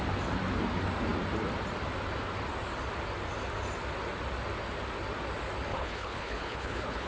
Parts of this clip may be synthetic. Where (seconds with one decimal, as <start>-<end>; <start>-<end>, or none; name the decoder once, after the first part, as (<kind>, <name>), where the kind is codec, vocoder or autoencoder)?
5.7-7.1 (codec, HILCodec)